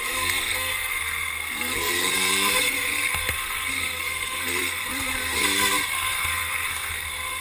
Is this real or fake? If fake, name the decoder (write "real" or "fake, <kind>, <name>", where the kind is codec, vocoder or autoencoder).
fake, codec, SNAC